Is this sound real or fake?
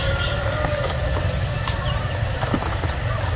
real